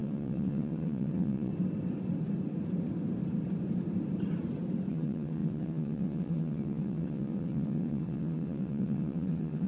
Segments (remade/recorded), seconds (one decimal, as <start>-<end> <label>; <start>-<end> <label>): 0.0-1.5 remade; 1.5-4.9 recorded; 4.9-9.7 remade